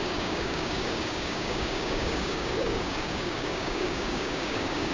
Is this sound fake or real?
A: fake